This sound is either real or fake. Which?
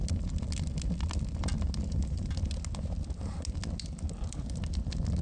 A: real